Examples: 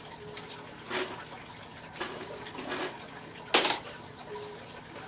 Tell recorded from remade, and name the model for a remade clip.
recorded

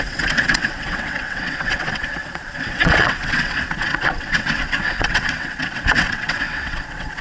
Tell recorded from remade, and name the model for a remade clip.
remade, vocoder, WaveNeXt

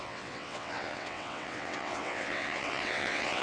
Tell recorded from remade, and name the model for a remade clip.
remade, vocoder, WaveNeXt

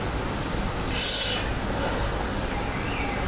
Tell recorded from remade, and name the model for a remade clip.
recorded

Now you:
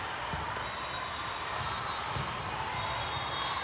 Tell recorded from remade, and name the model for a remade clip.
recorded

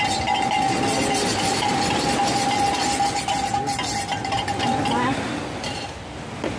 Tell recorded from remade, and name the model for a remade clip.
recorded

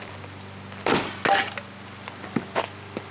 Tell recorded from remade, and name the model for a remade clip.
recorded